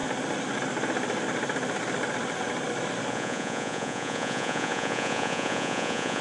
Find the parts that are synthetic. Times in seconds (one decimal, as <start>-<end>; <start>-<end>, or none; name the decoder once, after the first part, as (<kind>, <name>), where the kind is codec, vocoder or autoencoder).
3.1-6.2 (vocoder, Vocos)